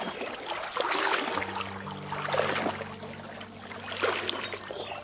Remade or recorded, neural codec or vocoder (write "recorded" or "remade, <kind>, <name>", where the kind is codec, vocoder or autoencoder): recorded